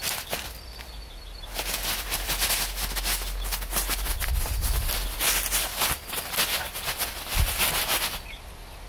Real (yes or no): yes